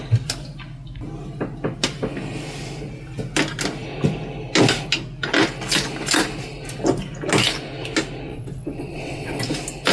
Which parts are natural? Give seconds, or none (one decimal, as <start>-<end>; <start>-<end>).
0.0-8.3; 9.4-9.9